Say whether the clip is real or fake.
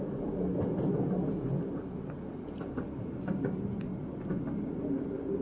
real